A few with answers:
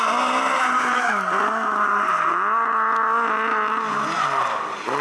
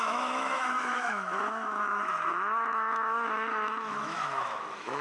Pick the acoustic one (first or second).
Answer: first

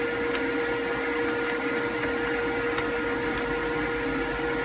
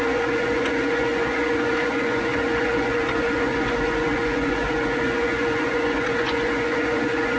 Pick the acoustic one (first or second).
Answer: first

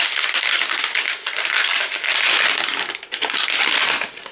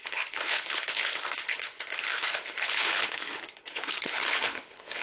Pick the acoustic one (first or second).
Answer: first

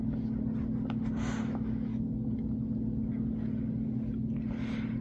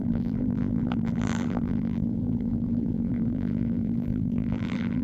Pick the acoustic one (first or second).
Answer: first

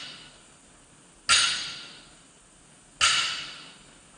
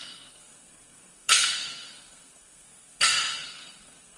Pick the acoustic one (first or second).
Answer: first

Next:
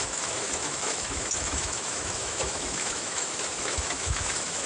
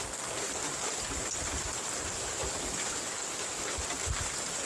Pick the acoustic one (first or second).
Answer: second